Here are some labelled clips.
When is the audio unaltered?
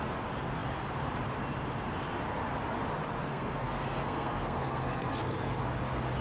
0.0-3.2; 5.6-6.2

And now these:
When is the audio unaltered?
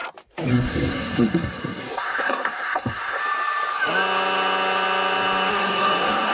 0.0-0.5; 3.2-5.5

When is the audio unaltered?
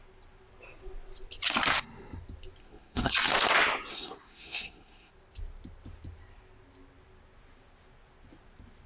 0.0-2.6; 3.1-3.9; 5.1-8.9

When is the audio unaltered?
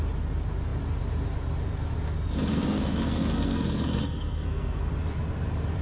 0.0-2.5; 4.9-5.8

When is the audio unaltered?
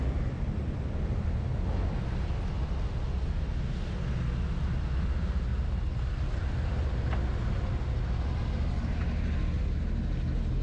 0.0-10.6